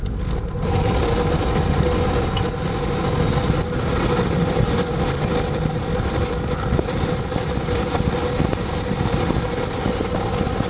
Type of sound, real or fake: real